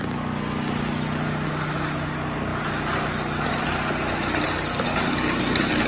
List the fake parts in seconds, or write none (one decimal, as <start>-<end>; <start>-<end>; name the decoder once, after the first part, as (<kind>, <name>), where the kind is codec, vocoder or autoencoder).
none